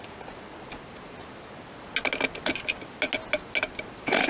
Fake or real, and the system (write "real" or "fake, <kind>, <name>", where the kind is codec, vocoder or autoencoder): real